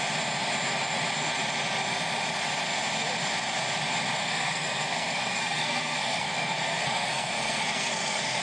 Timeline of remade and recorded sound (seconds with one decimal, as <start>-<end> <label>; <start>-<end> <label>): 0.0-4.2 recorded; 4.2-8.4 remade